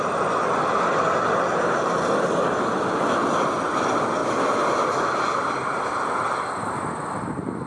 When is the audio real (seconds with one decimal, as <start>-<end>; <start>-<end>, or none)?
0.0-7.7